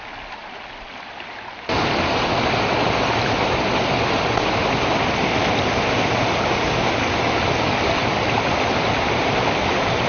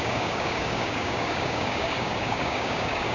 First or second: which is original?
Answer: first